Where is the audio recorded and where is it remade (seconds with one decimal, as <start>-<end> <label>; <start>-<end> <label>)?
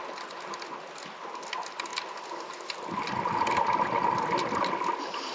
0.0-5.3 recorded